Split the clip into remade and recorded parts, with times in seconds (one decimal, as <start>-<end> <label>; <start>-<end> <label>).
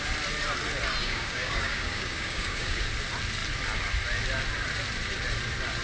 0.0-1.0 recorded; 1.0-2.8 remade; 2.8-5.8 recorded